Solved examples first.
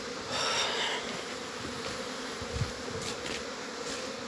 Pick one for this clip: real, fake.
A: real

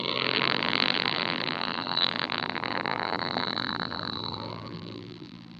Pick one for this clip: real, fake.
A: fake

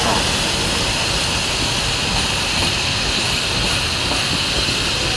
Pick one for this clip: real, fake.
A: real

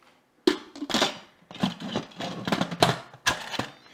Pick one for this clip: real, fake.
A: real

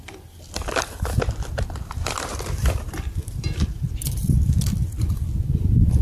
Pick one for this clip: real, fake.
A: fake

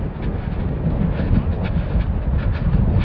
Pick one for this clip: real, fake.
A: real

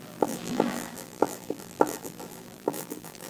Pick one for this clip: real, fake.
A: fake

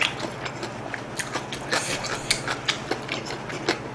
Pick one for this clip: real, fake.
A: real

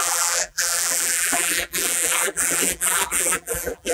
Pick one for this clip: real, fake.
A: fake